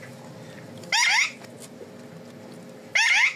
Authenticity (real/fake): real